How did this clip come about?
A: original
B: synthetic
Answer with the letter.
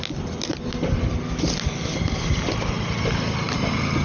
A